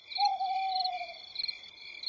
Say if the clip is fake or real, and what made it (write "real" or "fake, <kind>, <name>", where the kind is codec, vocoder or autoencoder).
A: real